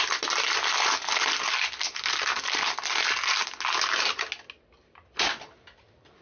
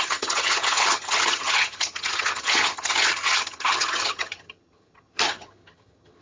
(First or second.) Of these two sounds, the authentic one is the first